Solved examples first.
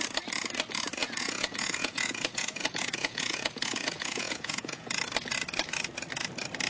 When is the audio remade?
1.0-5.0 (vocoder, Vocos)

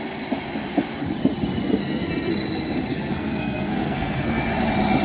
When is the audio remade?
1.8-2.3 (codec, SNAC); 2.9-4.4

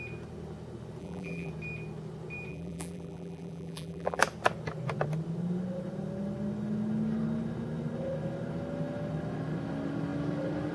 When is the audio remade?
1.0-1.5 (vocoder, BigVGAN v2); 2.5-4.2

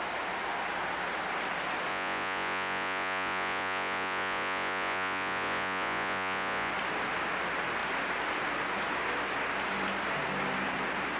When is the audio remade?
1.9-6.7 (vocoder, Vocos)

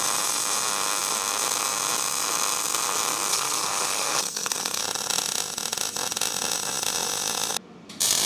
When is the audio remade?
3.3-4.8 (codec, SNAC)

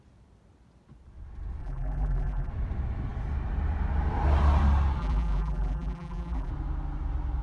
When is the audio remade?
1.6-2.5 (vocoder, BigVGAN v2); 5.0-6.5